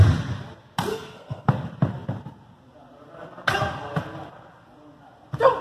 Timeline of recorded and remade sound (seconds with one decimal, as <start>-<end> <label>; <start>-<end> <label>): 0.0-0.9 recorded; 0.9-1.5 remade; 1.5-5.6 recorded